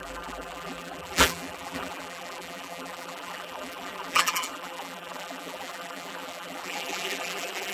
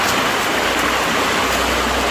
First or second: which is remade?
first